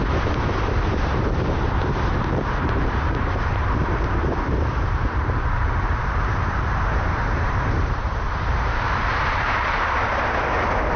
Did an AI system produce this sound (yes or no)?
yes